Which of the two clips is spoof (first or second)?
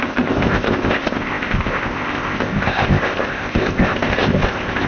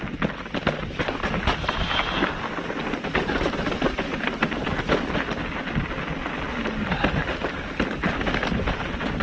first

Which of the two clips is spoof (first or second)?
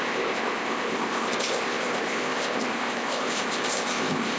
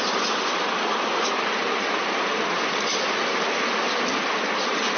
first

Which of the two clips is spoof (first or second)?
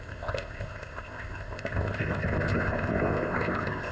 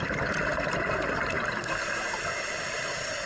first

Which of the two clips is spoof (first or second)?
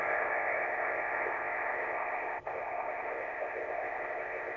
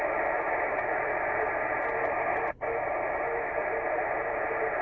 first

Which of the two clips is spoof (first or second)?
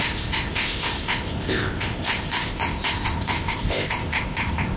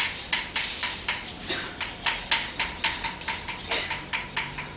first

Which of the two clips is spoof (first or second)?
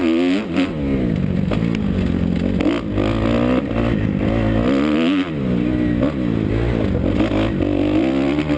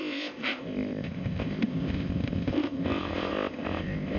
second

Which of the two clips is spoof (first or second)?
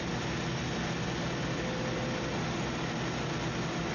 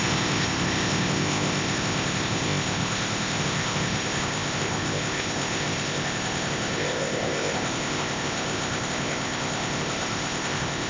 second